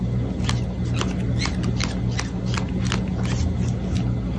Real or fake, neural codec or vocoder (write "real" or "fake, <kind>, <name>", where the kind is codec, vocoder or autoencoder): real